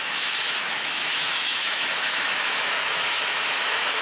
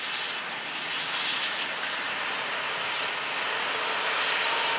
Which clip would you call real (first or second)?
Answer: second